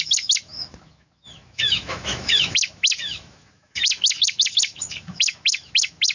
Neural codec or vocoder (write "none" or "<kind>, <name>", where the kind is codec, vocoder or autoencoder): autoencoder, DAC-VAE